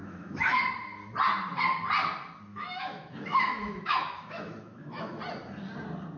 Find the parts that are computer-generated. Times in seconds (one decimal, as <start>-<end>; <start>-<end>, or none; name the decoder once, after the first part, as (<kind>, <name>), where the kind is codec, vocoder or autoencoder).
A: 0.0-0.6 (autoencoder, DAC-VAE); 2.5-5.2

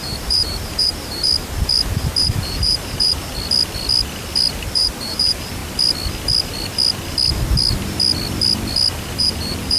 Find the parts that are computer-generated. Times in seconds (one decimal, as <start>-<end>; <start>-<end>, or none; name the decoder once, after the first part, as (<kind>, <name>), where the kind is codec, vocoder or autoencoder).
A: 0.0-1.3 (vocoder, BigVGAN v2); 2.2-3.3; 4.7-5.6; 9.2-9.8

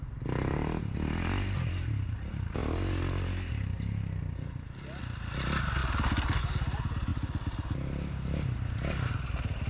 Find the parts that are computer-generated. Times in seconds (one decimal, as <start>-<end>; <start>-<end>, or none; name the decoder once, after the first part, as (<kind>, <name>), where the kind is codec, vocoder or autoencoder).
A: 5.8-6.4 (vocoder, BigVGAN v2)